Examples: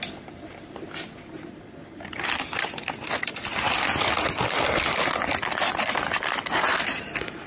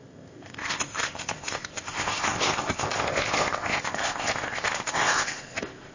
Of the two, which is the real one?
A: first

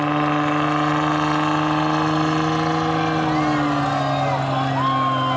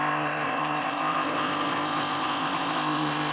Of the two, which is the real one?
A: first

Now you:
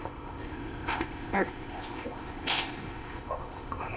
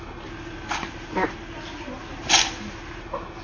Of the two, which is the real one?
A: second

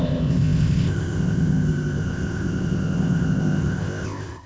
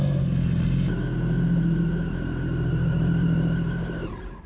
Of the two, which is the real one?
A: second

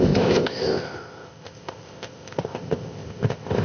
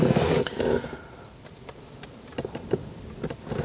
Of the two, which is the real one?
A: second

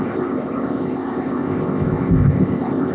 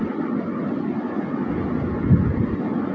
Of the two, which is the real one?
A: second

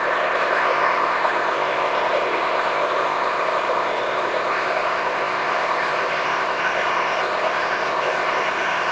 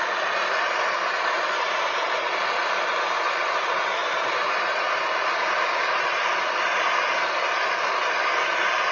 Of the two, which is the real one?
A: second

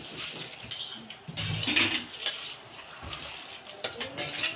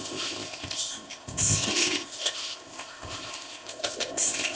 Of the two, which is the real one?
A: first